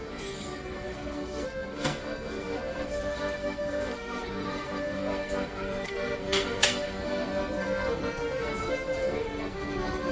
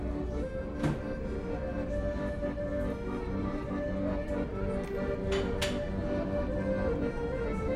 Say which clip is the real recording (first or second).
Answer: second